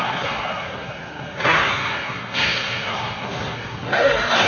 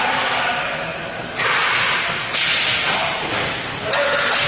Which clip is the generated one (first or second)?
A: first